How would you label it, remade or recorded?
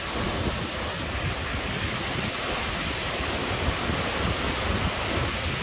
recorded